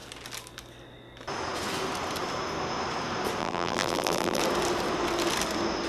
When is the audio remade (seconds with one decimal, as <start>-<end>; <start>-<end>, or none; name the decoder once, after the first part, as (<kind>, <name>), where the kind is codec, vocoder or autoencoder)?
3.4-4.4 (vocoder, BigVGAN v2)